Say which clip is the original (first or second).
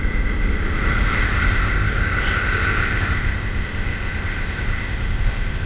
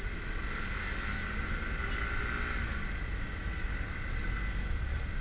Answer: second